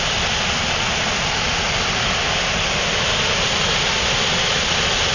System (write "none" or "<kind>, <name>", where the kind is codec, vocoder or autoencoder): none